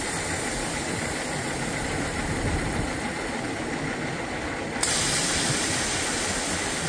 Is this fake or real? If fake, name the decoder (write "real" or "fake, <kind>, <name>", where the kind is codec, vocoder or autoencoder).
real